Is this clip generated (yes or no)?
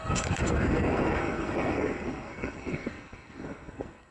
yes